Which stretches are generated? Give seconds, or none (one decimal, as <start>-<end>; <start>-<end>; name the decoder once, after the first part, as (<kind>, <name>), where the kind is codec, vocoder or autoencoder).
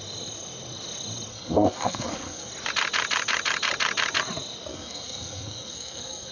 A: 1.3-2.5 (codec, SNAC); 4.7-6.3